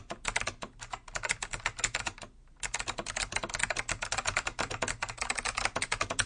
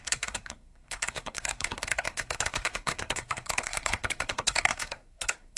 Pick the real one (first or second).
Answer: first